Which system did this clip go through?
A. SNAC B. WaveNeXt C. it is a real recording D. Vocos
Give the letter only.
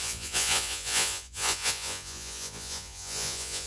D